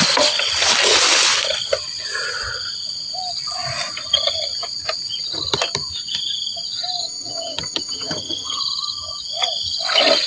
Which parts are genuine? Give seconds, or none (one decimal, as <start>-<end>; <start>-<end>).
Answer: 0.0-7.0; 8.6-10.3